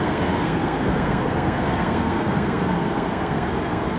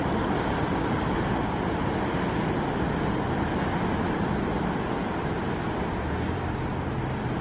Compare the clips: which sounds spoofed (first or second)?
first